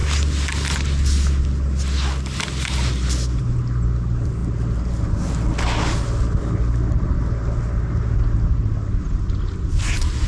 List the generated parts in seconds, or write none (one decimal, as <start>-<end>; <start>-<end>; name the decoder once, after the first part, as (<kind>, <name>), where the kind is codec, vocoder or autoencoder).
none